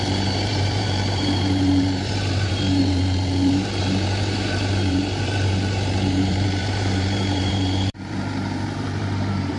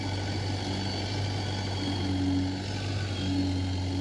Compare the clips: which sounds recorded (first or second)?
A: second